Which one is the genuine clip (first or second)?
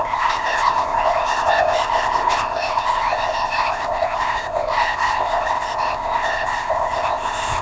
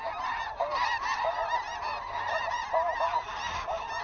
second